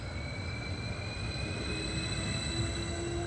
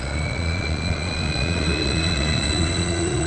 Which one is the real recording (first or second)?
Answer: first